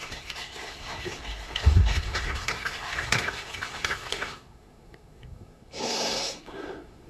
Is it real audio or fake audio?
fake